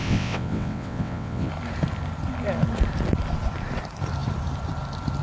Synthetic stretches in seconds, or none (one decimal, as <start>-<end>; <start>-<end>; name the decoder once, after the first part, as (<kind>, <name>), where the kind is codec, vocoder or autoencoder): 0.0-1.5 (vocoder, WaveNeXt)